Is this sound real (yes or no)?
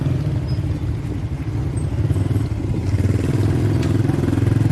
yes